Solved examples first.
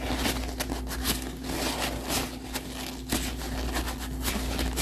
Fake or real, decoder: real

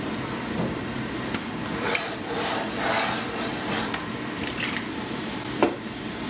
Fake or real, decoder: real